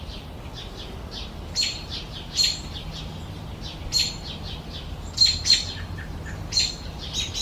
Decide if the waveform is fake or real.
real